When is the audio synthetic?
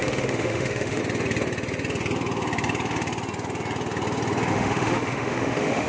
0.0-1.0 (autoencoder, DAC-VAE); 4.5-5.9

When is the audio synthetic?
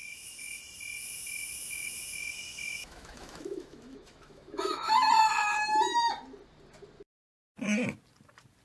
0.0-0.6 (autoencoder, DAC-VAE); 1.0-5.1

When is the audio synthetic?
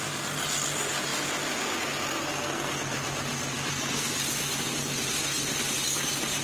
2.3-2.9 (codec, SNAC); 3.7-4.2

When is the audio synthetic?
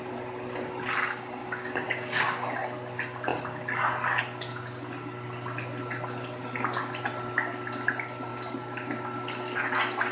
1.4-2.2 (codec, DAC)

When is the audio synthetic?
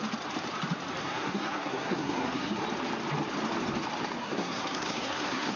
1.0-2.6 (codec, SNAC); 4.2-5.6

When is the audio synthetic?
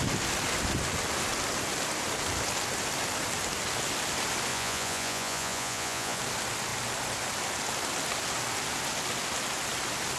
4.5-6.2 (vocoder, Vocos)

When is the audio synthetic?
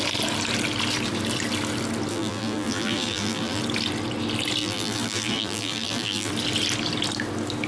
2.1-3.6 (vocoder, BigVGAN v2); 4.6-6.3